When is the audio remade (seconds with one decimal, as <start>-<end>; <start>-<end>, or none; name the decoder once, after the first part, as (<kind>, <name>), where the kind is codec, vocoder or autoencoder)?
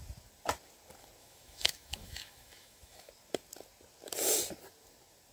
1.2-3.1 (autoencoder, DAC-VAE)